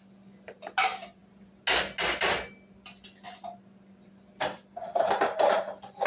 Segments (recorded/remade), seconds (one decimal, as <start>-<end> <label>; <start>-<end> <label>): 0.0-6.1 recorded